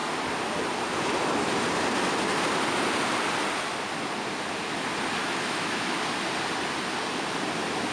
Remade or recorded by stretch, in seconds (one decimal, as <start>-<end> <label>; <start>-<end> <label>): 0.0-5.2 recorded; 5.2-6.0 remade; 6.0-7.9 recorded